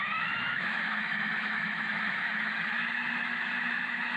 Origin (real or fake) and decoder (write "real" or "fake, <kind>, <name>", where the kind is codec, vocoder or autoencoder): fake, autoencoder, DAC-VAE